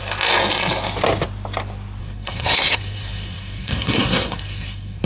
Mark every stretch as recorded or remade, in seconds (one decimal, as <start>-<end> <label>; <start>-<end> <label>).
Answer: 0.0-2.0 recorded; 2.0-5.0 remade

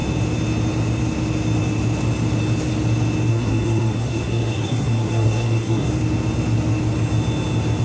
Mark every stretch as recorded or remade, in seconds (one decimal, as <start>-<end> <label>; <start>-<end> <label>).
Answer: 0.0-3.3 recorded; 3.3-5.9 remade; 5.9-7.8 recorded

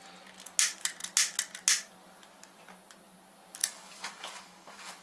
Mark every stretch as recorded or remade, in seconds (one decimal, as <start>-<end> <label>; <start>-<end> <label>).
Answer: 0.0-3.6 recorded; 3.6-5.0 remade

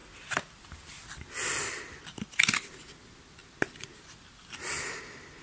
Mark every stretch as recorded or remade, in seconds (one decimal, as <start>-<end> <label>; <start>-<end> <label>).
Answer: 0.0-0.9 remade; 0.9-5.4 recorded